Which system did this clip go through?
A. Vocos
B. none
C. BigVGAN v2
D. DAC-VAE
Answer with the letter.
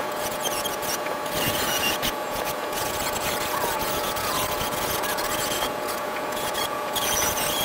A